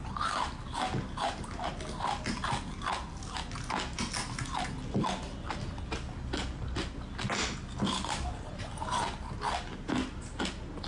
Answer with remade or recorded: recorded